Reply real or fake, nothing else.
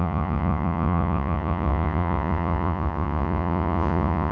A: fake